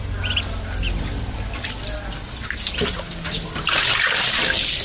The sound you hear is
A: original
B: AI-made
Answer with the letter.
A